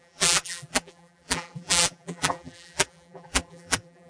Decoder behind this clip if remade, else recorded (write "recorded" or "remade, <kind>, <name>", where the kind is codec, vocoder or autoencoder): remade, vocoder, BigVGAN v2